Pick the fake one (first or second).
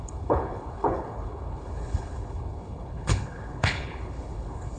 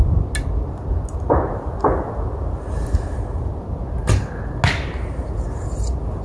first